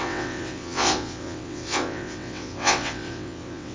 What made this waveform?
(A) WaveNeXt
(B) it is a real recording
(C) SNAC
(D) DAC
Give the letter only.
A